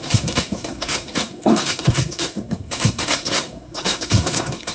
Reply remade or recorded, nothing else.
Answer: remade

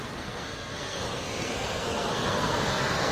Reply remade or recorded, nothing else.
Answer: remade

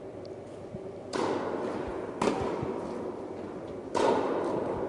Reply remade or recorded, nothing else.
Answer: recorded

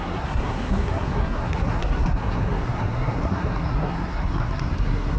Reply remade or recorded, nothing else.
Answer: remade